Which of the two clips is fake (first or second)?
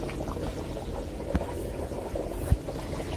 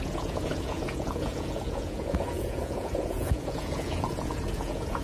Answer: second